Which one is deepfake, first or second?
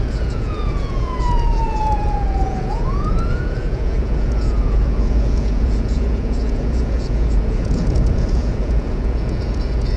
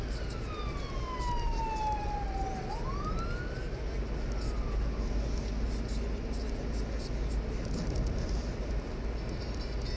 first